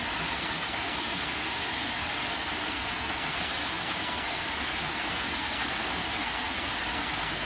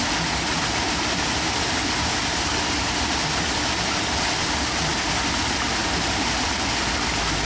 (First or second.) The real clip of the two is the second